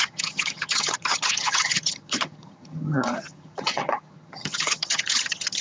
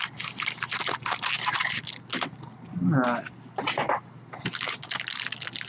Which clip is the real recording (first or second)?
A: second